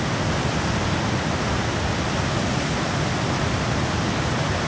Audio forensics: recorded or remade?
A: recorded